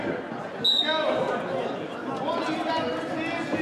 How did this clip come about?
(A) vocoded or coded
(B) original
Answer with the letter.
B